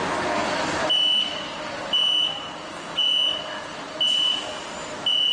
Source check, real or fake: real